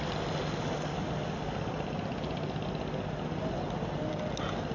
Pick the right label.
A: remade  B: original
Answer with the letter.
B